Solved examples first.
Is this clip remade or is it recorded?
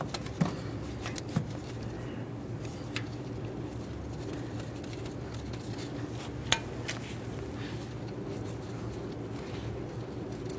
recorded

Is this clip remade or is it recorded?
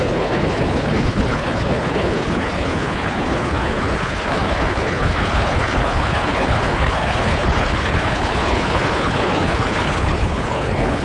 remade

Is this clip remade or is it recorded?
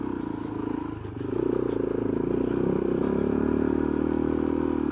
recorded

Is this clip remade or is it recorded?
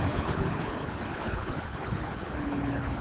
remade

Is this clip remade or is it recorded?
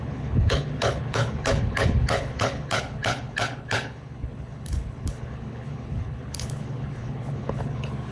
remade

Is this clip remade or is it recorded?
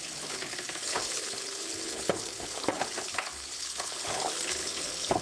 remade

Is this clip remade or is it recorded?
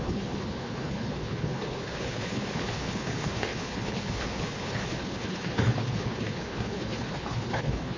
remade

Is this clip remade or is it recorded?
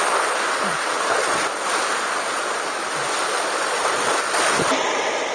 recorded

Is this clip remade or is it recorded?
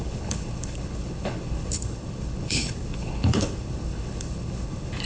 remade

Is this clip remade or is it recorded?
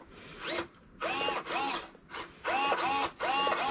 recorded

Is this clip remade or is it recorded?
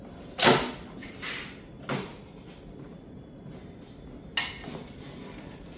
recorded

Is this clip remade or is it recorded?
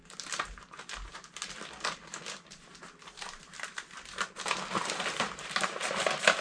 recorded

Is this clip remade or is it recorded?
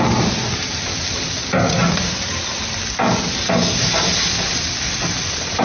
recorded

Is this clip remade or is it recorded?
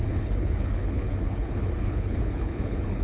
remade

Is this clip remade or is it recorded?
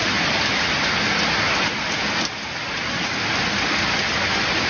recorded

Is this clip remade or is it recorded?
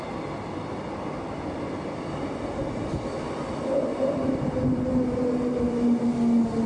recorded